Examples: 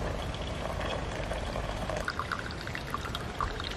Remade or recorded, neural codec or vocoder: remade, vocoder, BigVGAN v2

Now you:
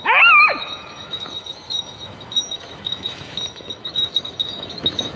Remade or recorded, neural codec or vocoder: remade, autoencoder, DAC-VAE